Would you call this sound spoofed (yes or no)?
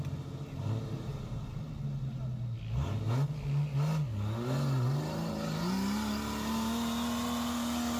no